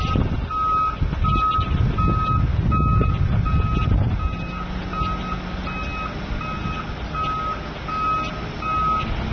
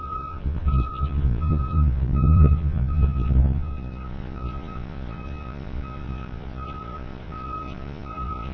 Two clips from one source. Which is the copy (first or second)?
second